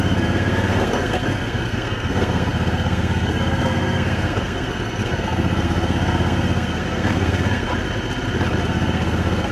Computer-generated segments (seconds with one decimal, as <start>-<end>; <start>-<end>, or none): 0.0-7.7; 8.6-9.5